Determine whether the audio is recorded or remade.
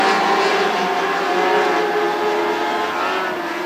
recorded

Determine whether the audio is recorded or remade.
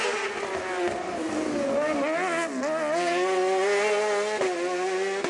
recorded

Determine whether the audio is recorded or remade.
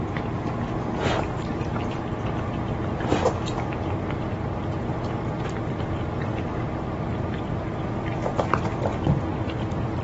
recorded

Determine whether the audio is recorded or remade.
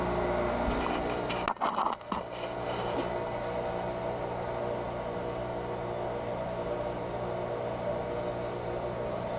recorded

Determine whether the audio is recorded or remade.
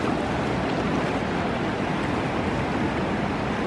recorded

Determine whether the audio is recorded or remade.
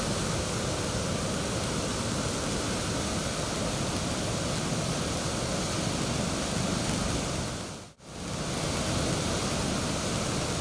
recorded